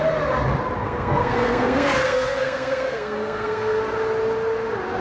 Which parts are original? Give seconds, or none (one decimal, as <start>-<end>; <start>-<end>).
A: 0.0-0.8; 3.8-5.0